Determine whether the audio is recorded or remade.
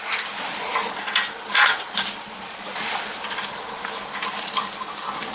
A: recorded